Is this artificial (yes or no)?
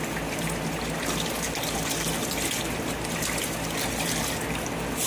no